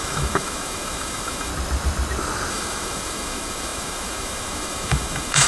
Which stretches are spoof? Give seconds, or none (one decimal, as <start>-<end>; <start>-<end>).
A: 0.0-1.5; 2.5-5.5